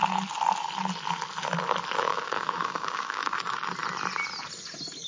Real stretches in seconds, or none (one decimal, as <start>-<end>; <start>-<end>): 0.0-2.1; 3.6-5.1